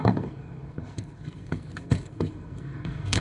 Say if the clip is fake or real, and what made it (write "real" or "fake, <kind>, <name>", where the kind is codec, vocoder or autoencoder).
fake, codec, SNAC